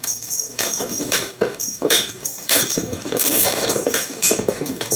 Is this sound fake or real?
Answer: fake